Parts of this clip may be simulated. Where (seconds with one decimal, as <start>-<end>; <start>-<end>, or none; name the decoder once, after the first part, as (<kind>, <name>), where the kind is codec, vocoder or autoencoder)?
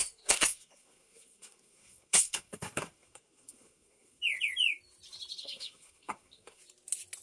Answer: 0.0-4.2 (codec, SNAC); 5.4-6.6